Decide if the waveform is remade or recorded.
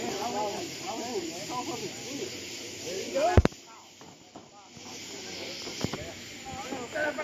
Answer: recorded